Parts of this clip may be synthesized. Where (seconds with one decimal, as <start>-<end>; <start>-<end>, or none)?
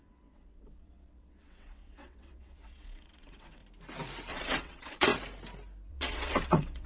0.0-3.6; 4.3-5.1; 5.9-6.9